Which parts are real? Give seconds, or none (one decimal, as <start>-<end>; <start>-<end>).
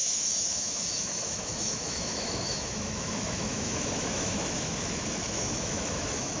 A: none